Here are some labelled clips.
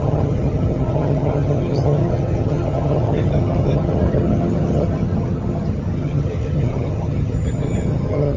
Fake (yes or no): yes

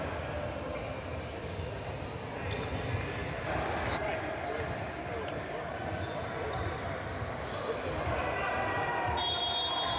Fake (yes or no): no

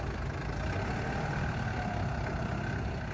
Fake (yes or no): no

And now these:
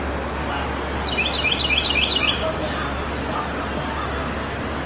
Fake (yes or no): no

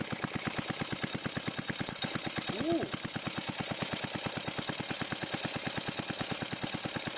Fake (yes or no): no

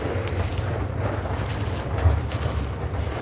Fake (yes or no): no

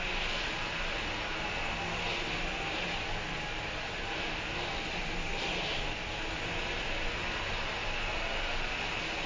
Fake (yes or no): no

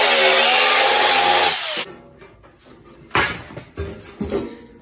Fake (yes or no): no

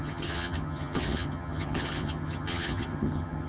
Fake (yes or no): yes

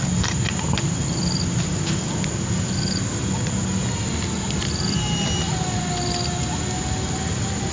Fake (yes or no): no